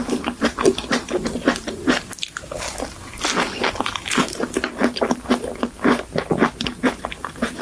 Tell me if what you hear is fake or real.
fake